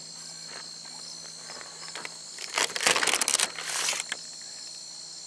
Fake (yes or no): no